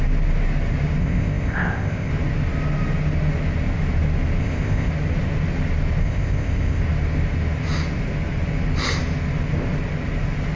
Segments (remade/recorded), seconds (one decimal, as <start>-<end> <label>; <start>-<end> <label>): 0.0-1.0 recorded; 1.0-2.1 remade; 2.1-4.4 recorded; 4.4-4.9 remade; 4.9-6.0 recorded; 6.0-6.8 remade; 6.8-10.6 recorded

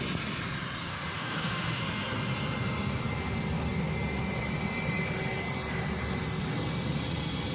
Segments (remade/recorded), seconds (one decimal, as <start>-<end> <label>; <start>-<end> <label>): 0.0-0.9 recorded; 0.9-1.8 remade; 1.8-7.5 recorded

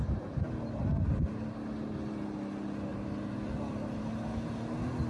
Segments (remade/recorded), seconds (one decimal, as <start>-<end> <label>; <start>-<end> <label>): 0.0-5.1 recorded

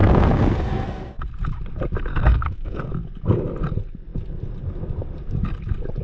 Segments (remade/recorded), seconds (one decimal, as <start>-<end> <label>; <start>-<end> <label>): 0.0-1.2 remade; 1.2-2.1 recorded; 2.1-2.9 remade; 2.9-6.0 recorded

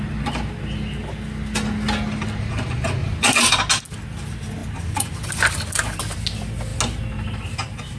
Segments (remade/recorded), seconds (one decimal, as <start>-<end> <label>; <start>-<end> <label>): 0.0-3.0 recorded; 3.0-3.7 remade; 3.7-4.6 recorded; 4.6-5.3 remade; 5.3-8.0 recorded